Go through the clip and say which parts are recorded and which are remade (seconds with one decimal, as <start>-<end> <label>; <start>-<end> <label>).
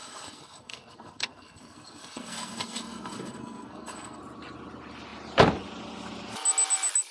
0.0-4.2 remade; 4.2-7.1 recorded